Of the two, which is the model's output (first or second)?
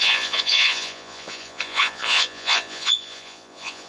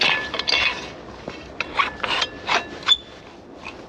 first